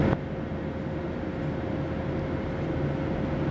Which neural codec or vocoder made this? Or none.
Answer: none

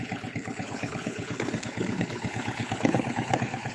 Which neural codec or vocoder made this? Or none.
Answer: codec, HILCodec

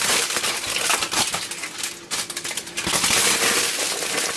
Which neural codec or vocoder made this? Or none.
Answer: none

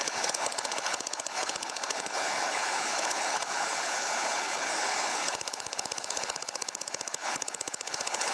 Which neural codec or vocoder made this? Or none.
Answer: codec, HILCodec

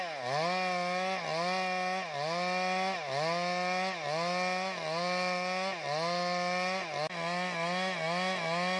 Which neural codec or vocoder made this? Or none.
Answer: none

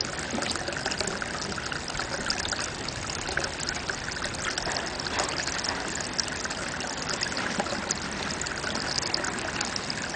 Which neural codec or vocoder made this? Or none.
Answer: none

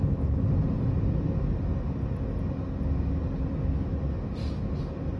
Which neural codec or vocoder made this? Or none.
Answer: none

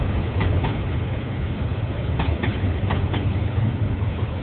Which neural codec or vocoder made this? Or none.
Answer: codec, HILCodec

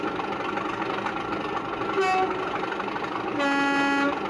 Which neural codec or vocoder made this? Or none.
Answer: none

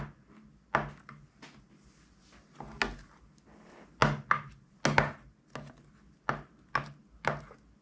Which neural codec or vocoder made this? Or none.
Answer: none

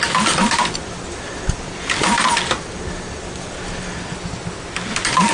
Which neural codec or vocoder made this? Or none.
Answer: none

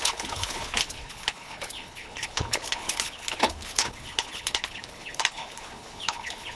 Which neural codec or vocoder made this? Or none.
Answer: codec, HILCodec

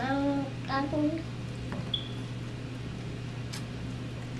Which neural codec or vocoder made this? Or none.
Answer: none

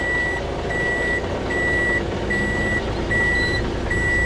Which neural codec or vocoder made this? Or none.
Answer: none